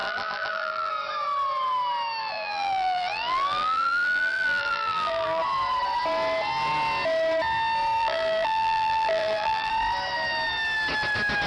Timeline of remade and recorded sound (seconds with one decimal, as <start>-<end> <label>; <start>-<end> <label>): 0.0-0.9 remade; 0.9-2.2 recorded; 2.2-5.4 remade; 5.4-8.0 recorded; 8.0-9.7 remade; 9.7-11.5 recorded

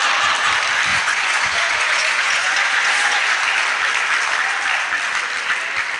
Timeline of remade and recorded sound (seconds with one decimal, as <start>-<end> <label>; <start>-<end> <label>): 0.0-0.9 recorded; 0.9-3.4 remade; 3.4-6.0 recorded

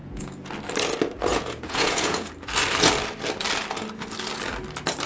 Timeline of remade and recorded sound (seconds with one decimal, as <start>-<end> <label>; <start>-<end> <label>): 0.0-0.5 remade; 0.5-1.3 recorded; 1.3-2.3 remade; 2.3-5.1 recorded

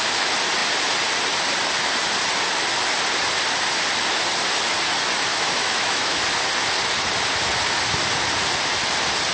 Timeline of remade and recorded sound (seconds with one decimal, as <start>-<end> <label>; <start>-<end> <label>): 0.0-5.3 recorded; 5.3-6.2 remade; 6.2-9.3 recorded

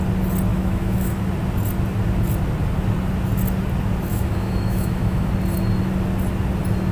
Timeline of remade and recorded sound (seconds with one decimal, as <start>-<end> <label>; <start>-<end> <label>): 0.0-0.5 recorded; 0.5-1.2 remade; 1.2-4.1 recorded; 4.1-5.3 remade; 5.3-6.9 recorded

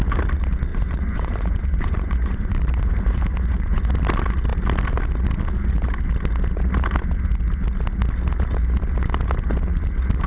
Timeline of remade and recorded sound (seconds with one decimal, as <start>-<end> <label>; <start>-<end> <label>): 0.0-0.7 recorded; 0.7-3.9 remade; 3.9-10.3 recorded

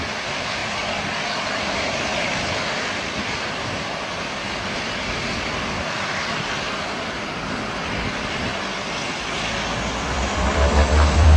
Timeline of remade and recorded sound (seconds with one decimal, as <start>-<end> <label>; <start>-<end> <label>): 0.0-0.6 remade; 0.6-1.6 recorded; 1.6-8.5 remade; 8.5-10.0 recorded; 10.0-11.4 remade